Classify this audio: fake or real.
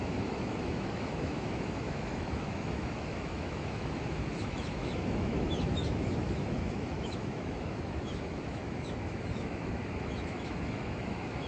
fake